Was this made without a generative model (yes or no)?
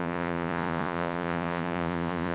no